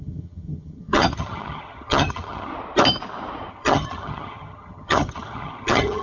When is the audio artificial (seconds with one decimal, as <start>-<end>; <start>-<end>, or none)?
0.0-2.5; 3.5-6.0

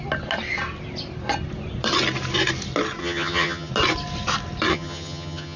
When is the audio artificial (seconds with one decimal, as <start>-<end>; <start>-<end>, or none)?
3.0-3.7; 4.7-5.6

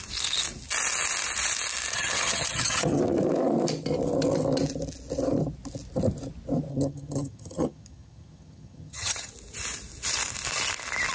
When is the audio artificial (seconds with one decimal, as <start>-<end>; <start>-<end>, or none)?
1.9-3.0; 6.7-9.3

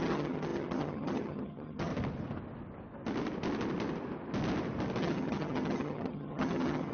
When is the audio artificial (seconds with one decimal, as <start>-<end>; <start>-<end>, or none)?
0.0-1.9; 5.0-6.9